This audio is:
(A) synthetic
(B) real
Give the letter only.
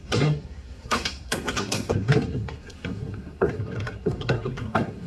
A